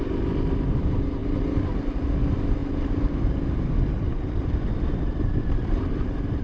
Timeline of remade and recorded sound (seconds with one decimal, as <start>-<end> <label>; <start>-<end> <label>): 0.0-1.2 remade; 1.2-2.1 recorded; 2.1-6.4 remade